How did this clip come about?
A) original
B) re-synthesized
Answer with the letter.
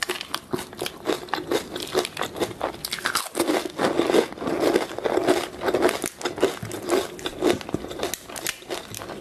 A